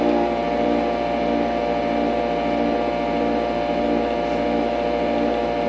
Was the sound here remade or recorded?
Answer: recorded